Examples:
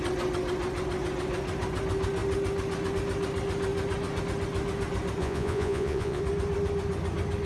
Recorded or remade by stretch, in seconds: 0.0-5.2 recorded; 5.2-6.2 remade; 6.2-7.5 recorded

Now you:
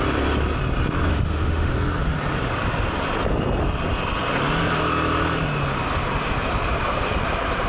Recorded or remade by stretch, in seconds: 0.0-1.1 recorded; 1.1-1.7 remade; 1.7-7.7 recorded

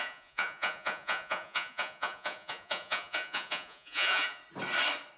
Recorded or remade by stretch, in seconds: 0.0-4.4 remade; 4.4-5.2 recorded

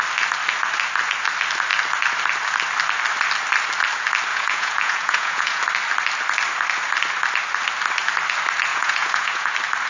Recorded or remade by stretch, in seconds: 0.0-4.3 recorded; 4.3-5.6 remade; 5.6-8.7 recorded; 8.7-9.5 remade; 9.5-9.9 recorded

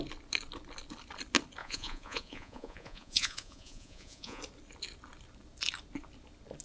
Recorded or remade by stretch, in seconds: 0.0-1.6 recorded; 1.6-4.4 remade; 4.4-6.6 recorded